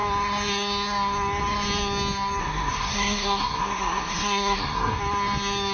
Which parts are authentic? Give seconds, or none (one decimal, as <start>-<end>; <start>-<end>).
0.0-2.4; 5.0-5.7